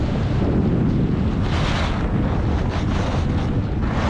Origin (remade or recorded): recorded